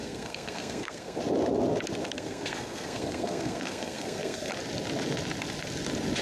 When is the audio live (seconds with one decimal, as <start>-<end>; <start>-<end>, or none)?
1.2-2.0; 4.5-6.2